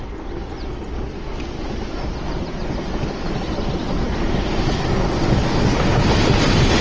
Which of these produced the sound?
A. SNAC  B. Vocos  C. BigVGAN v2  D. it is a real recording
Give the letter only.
D